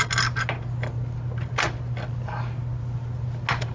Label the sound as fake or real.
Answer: real